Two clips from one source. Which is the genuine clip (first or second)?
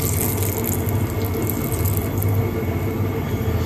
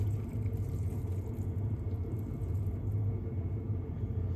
first